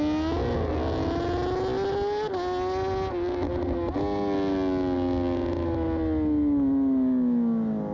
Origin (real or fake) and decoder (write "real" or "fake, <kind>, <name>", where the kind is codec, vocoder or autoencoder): real